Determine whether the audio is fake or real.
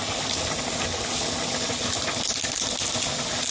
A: real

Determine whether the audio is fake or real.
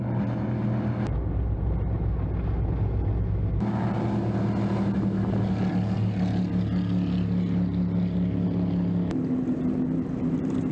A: real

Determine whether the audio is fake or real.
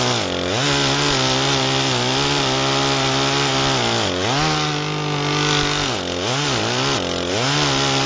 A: real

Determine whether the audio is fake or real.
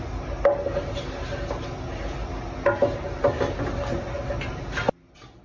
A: real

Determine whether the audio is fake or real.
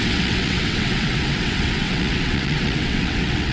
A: fake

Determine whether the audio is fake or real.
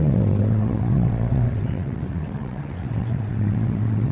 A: fake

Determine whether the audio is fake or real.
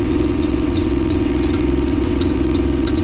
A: fake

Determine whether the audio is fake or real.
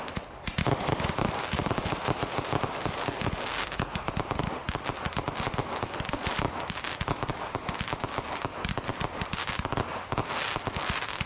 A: real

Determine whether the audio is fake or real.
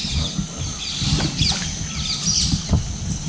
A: real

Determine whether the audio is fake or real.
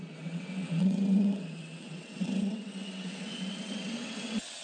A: fake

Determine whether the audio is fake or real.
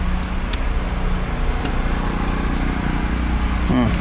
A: real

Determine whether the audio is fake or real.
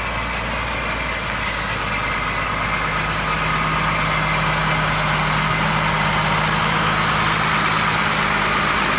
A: real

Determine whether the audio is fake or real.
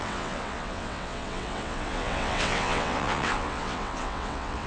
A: fake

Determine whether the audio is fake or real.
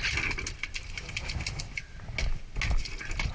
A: real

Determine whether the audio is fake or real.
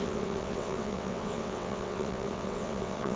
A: fake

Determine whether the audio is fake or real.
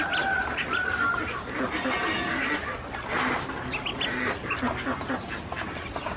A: real